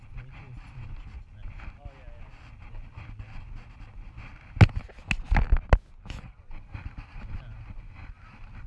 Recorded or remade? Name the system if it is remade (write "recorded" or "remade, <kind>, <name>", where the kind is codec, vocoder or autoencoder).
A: recorded